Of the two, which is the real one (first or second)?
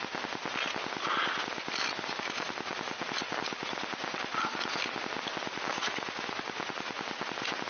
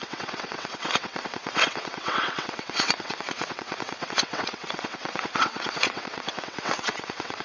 first